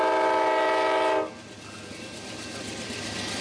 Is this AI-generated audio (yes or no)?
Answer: no